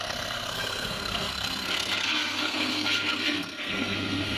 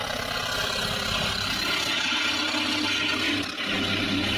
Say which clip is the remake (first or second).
first